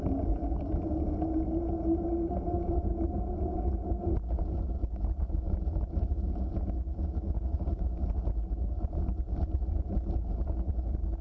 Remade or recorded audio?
recorded